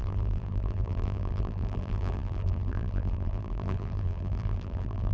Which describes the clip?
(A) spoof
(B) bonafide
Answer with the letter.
A